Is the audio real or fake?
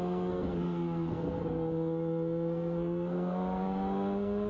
fake